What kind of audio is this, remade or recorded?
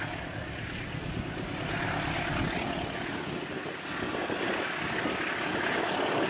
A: recorded